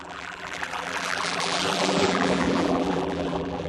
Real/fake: fake